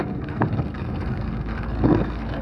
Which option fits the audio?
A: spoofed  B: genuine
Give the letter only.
A